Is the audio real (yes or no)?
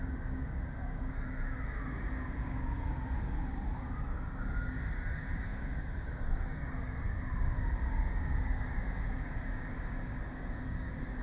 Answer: no